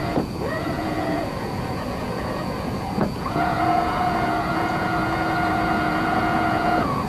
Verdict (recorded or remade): remade